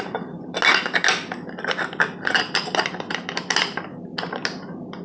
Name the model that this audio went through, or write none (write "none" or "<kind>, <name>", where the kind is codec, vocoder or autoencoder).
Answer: none